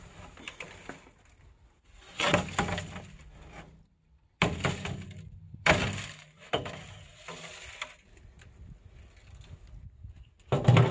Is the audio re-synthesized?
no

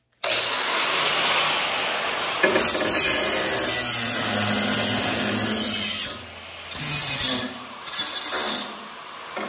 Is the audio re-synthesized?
no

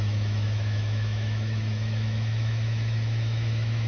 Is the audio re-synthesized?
yes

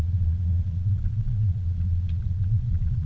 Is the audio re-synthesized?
yes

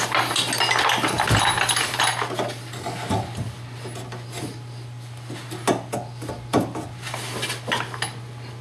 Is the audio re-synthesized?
no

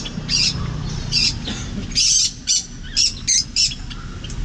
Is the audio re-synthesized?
no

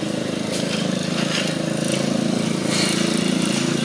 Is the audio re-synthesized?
no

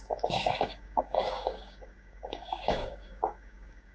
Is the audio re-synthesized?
yes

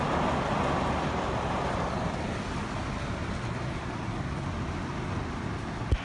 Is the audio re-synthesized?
no